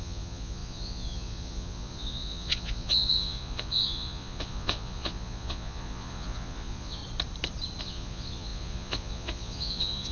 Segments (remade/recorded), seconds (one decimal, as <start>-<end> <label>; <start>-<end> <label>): 0.0-7.0 remade; 7.0-7.8 recorded; 7.8-10.1 remade